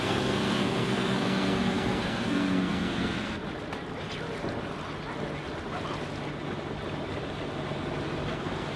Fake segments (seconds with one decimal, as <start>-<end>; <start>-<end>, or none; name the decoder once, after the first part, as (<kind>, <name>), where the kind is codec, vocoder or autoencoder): 0.0-3.4 (codec, SNAC); 8.3-8.8